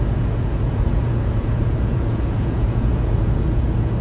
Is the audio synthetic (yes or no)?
yes